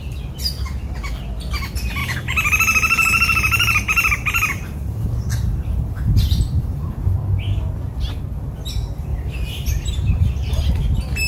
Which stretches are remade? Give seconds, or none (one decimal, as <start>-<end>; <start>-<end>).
2.0-6.9; 9.1-10.6